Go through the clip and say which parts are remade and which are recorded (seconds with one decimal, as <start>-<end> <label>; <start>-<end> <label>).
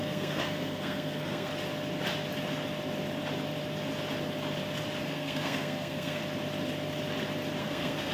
0.0-1.5 remade; 1.5-5.0 recorded; 5.0-6.2 remade; 6.2-7.6 recorded; 7.6-8.1 remade